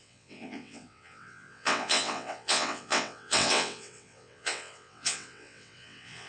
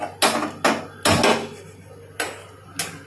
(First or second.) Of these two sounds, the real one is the second